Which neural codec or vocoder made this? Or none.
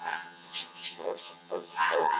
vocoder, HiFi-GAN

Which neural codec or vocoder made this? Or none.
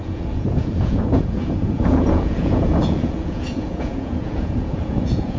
vocoder, Vocos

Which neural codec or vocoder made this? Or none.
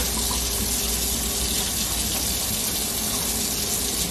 none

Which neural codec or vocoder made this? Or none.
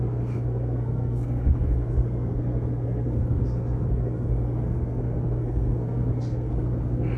codec, SNAC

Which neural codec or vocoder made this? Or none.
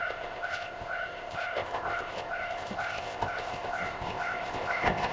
codec, ZipCodec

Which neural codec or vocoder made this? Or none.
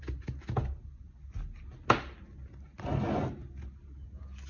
none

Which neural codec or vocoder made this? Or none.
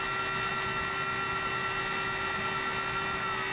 none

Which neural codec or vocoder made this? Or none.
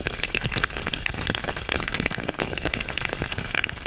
codec, SNAC